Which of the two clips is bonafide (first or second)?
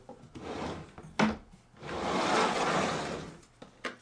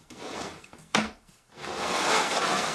first